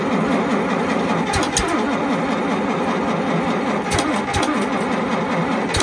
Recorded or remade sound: recorded